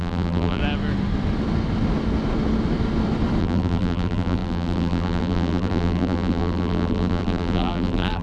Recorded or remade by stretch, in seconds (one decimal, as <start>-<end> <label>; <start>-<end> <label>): 0.0-0.6 remade; 0.6-3.4 recorded; 3.4-8.2 remade